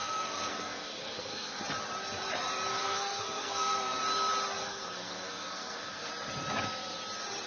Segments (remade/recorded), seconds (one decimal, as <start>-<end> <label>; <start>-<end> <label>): 0.0-1.6 remade; 1.6-2.8 recorded; 2.8-4.0 remade; 4.0-4.6 recorded; 4.6-6.1 remade; 6.1-7.5 recorded